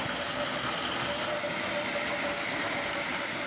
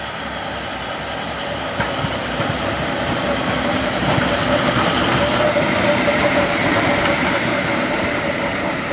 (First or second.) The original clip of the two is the first